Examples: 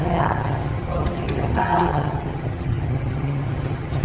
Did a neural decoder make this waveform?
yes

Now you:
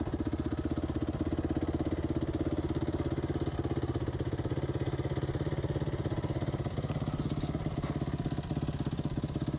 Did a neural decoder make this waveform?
no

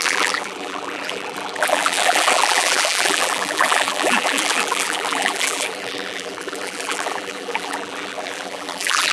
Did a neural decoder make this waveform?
yes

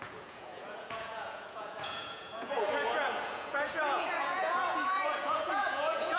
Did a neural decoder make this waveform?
yes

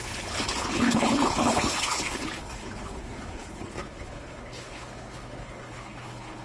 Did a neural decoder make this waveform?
yes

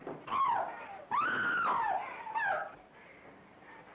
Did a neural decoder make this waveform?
no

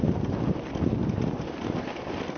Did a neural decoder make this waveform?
no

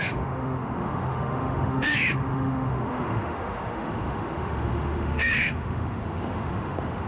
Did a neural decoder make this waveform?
yes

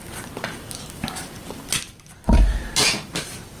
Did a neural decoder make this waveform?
no